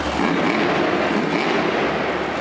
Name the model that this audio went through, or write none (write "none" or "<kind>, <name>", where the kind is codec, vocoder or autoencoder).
none